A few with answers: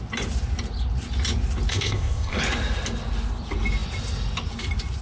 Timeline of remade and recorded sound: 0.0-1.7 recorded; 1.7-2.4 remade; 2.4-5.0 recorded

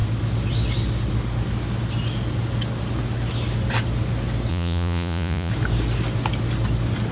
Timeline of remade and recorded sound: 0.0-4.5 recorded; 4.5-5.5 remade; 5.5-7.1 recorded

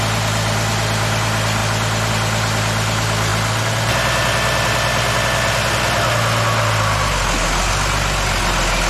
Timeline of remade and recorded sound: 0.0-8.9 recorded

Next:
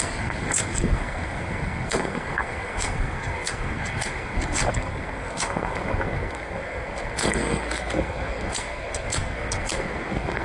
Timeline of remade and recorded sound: 0.0-10.4 remade

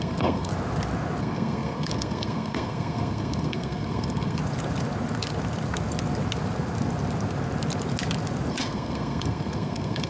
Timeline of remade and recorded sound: 0.0-0.5 remade; 0.5-1.2 recorded; 1.2-4.4 remade; 4.4-8.5 recorded; 8.5-10.1 remade